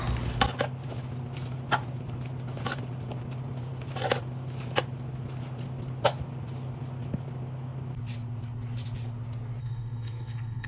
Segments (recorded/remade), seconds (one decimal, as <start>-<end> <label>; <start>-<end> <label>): 0.0-9.6 recorded; 9.6-10.7 remade